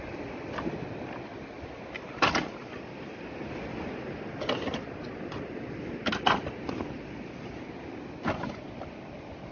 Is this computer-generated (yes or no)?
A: no